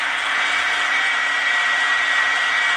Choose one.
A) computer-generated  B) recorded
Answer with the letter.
B